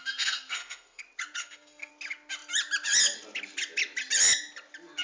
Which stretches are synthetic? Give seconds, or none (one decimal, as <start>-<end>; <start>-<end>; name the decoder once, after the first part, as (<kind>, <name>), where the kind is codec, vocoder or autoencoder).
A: 0.0-1.0 (codec, SNAC); 1.4-1.9